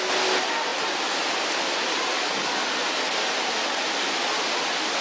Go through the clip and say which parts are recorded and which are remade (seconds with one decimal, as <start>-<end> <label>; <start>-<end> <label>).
0.0-5.0 recorded